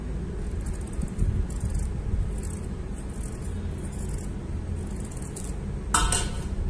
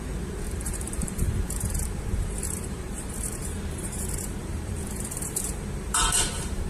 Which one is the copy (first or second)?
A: second